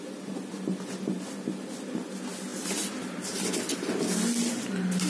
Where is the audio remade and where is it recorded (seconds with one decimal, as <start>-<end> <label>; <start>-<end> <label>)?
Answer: 0.0-5.1 recorded